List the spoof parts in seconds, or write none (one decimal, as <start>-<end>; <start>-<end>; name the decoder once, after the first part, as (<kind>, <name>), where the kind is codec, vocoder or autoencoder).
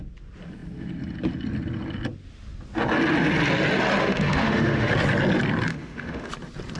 4.0-4.9 (autoencoder, DAC-VAE); 5.7-6.3